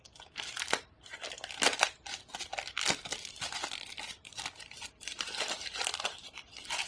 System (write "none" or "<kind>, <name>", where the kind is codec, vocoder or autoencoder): none